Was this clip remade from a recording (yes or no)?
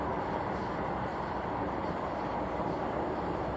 yes